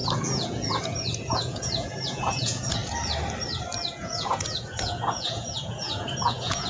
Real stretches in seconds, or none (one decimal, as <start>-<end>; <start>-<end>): 2.8-3.9